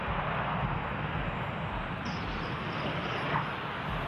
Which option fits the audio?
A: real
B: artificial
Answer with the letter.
A